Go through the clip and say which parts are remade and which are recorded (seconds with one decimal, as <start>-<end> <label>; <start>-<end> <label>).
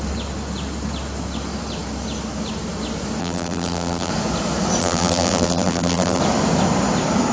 0.0-3.2 recorded; 3.2-4.1 remade; 4.1-4.8 recorded; 4.8-6.2 remade; 6.2-7.3 recorded